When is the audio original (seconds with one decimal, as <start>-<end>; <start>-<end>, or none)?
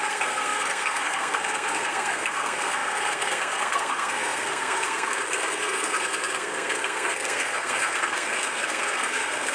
none